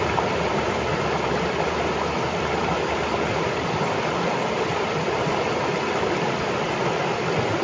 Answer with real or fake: fake